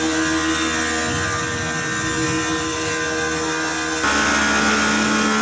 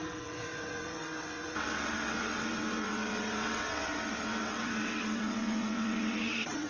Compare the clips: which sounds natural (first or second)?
first